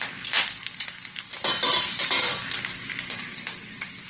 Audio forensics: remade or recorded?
recorded